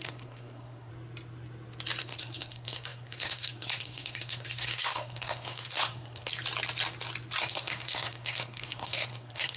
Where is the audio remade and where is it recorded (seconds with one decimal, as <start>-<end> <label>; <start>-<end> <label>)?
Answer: 0.0-0.9 remade; 0.9-2.0 recorded; 2.0-6.3 remade; 6.3-7.4 recorded; 7.4-9.6 remade